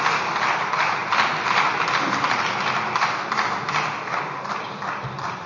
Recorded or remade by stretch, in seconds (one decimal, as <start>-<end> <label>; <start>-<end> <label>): 0.0-5.5 recorded